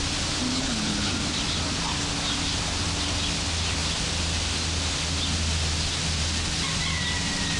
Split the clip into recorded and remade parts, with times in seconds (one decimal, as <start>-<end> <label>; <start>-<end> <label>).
0.0-0.5 recorded; 0.5-1.1 remade; 1.1-7.6 recorded